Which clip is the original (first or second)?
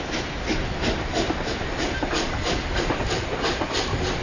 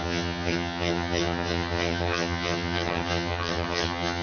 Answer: first